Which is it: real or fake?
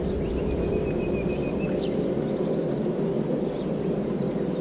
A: real